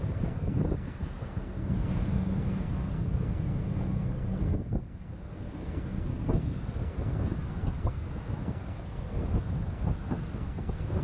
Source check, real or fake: fake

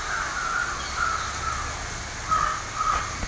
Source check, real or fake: real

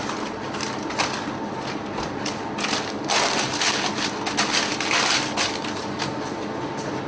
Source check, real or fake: real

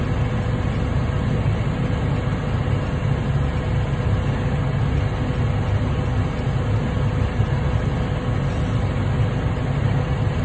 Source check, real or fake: real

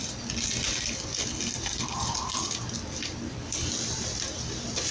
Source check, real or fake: real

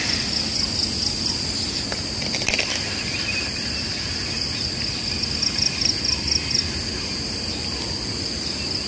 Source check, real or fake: real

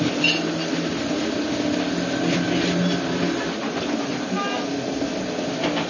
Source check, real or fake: real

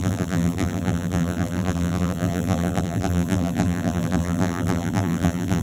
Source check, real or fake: fake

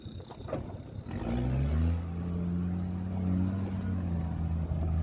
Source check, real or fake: real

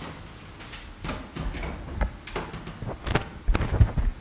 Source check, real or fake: real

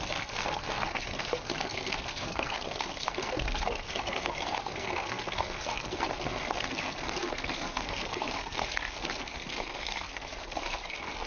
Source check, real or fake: fake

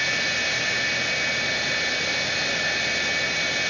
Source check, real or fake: real